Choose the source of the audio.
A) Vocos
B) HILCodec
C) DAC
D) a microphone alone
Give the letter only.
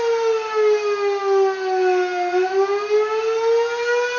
D